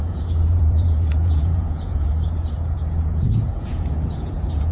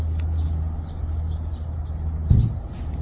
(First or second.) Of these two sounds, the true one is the second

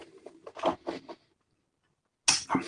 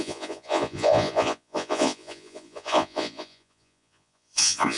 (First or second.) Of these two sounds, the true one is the first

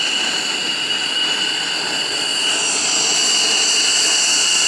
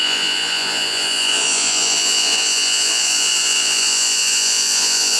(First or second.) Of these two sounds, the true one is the first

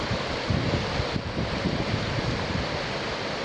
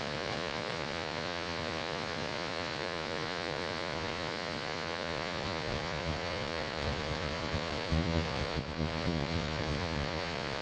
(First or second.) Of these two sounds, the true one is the first